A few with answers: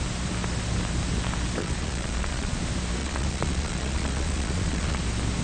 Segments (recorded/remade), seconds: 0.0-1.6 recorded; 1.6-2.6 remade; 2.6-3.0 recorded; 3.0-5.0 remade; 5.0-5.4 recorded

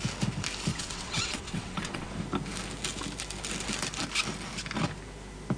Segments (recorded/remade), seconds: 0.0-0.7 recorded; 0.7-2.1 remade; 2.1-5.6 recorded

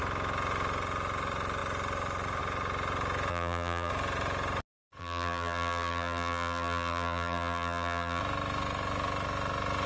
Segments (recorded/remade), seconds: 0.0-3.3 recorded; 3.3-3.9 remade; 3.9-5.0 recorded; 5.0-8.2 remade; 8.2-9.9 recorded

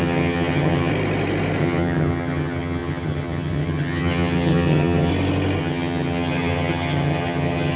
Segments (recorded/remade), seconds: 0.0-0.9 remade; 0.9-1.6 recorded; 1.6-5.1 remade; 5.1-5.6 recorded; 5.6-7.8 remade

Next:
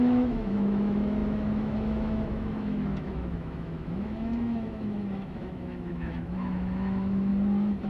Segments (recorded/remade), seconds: 0.0-7.3 remade; 7.3-7.9 recorded

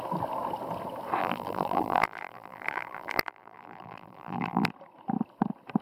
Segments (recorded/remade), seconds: 0.0-1.2 recorded; 1.2-4.7 remade; 4.7-5.8 recorded

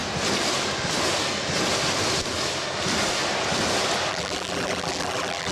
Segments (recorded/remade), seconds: 0.0-4.1 recorded; 4.1-5.5 remade